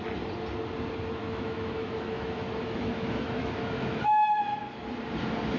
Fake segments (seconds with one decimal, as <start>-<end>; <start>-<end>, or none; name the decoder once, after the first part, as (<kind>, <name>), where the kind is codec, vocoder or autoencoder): 1.2-4.6 (autoencoder, DAC-VAE)